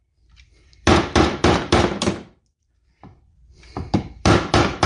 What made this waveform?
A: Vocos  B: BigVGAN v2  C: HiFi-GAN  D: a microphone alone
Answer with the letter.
B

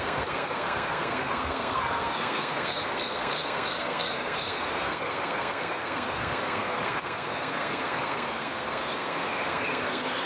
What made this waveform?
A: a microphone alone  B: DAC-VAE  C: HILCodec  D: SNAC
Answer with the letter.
D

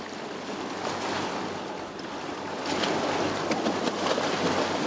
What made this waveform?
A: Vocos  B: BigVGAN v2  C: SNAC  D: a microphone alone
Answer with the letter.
D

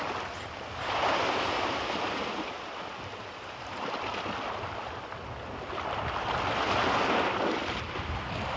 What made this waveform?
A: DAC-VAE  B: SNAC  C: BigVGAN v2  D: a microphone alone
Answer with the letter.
D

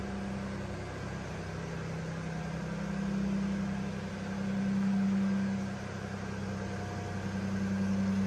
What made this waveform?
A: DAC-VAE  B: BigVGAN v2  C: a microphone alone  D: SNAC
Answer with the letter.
C